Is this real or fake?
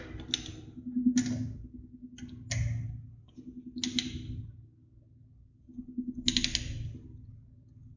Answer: real